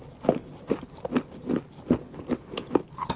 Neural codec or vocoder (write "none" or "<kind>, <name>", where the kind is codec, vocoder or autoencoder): none